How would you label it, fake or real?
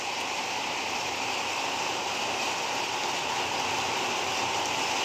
real